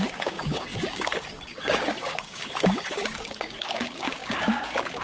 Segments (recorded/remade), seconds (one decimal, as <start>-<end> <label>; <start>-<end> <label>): 0.0-5.0 remade